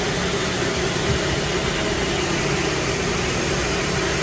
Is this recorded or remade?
recorded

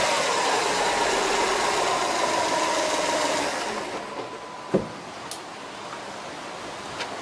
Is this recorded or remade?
recorded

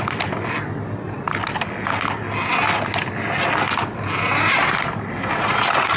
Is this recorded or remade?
recorded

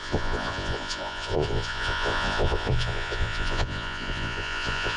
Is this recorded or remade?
remade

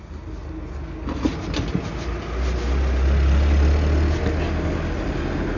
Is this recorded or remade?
recorded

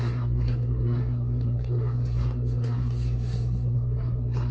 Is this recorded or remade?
remade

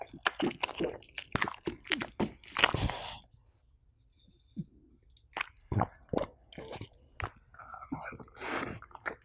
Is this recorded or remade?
recorded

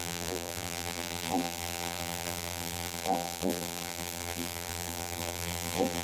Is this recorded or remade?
remade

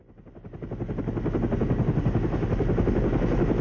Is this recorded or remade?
recorded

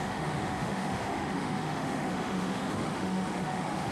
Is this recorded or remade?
remade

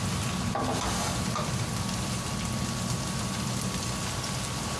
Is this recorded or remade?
recorded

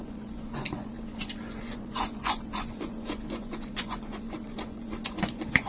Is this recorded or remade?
remade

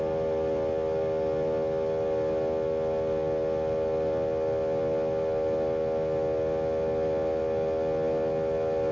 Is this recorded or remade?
recorded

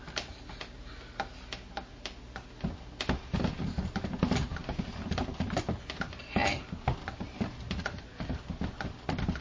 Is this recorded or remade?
recorded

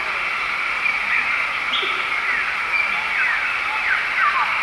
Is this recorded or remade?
recorded